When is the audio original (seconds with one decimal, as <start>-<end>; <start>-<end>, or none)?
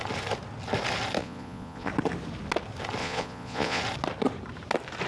0.0-1.2; 1.9-3.0; 3.8-5.1